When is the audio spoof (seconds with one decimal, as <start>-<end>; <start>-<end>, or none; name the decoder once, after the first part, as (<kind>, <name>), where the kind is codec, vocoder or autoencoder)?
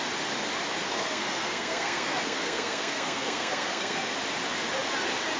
0.9-4.1 (codec, SNAC)